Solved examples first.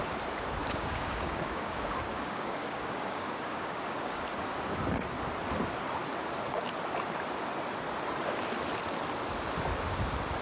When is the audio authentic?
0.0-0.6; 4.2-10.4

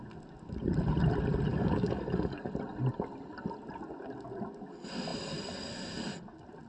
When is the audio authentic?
0.0-1.5; 2.5-6.7

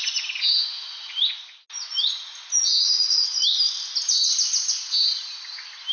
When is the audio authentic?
0.0-5.9

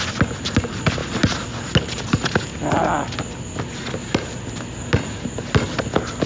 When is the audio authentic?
0.0-6.3

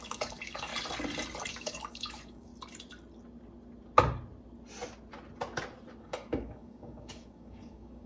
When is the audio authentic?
0.7-1.5; 2.5-6.0

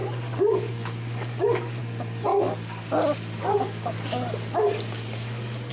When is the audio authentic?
1.8-2.3; 2.9-3.4

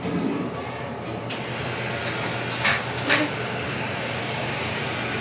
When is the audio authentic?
0.0-2.7; 4.8-5.2

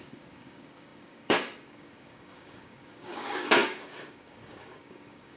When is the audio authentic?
none